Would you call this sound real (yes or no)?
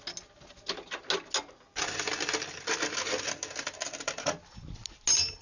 yes